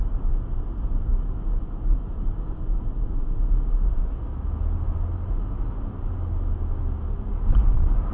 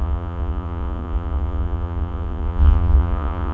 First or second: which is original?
first